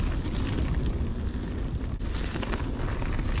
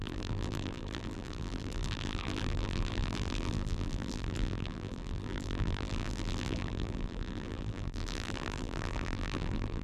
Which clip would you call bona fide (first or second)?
first